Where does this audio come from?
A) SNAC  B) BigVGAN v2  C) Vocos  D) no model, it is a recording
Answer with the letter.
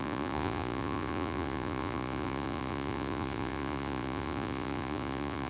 C